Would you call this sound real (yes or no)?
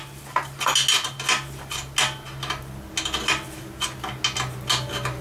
yes